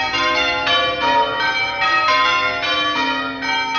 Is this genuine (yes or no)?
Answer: yes